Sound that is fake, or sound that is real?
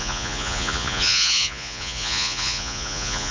fake